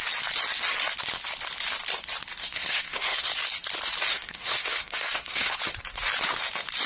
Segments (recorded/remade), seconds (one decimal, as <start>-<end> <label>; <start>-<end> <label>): 0.0-2.4 recorded; 2.4-3.3 remade; 3.3-4.1 recorded; 4.1-5.6 remade; 5.6-6.9 recorded